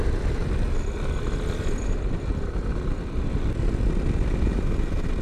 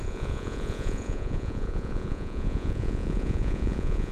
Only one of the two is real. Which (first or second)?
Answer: first